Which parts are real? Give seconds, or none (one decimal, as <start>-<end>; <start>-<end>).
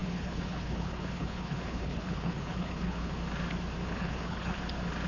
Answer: 3.1-3.9; 4.6-5.1